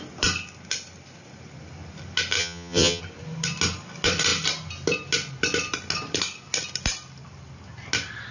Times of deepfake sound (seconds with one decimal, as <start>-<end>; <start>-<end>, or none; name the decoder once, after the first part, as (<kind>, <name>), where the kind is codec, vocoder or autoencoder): 2.4-3.0 (vocoder, HiFi-GAN)